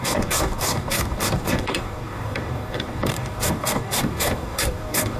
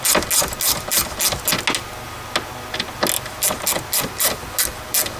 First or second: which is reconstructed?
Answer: first